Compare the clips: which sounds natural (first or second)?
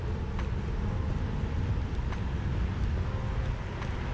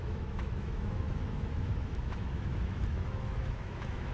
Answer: first